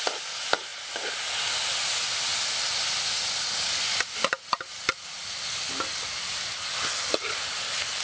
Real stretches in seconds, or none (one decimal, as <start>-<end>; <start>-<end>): 0.0-8.0